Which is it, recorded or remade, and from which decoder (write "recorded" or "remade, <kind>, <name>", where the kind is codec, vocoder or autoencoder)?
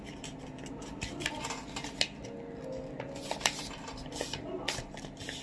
recorded